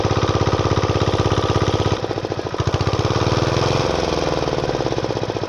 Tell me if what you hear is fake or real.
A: real